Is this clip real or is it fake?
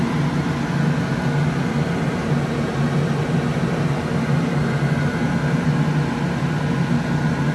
real